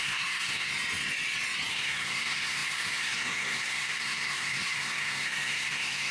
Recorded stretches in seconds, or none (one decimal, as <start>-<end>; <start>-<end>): 0.7-1.7